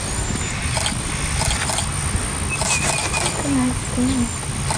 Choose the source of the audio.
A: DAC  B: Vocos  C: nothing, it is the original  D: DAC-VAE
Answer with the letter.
C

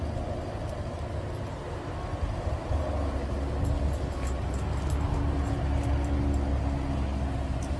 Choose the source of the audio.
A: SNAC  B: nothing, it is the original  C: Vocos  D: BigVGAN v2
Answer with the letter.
B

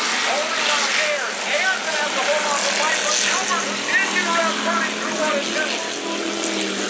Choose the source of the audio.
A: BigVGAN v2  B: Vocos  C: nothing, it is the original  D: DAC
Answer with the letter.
C